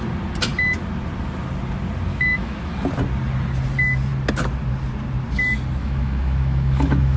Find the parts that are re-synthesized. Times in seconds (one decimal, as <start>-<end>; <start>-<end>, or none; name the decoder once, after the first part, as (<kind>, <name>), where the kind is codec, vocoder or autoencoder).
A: 2.1-2.7 (autoencoder, DAC-VAE); 5.8-7.2